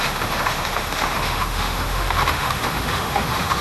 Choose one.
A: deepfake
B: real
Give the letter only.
A